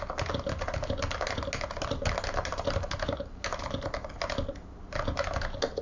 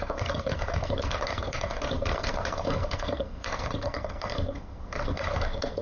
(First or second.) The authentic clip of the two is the first